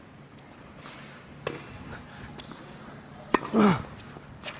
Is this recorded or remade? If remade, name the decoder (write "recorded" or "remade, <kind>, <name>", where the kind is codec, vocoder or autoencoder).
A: recorded